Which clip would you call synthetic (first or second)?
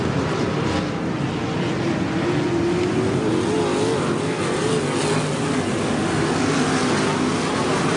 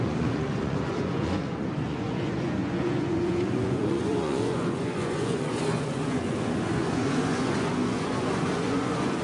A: second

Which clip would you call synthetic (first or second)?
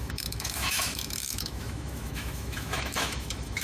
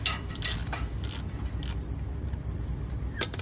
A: first